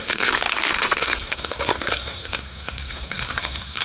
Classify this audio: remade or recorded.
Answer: remade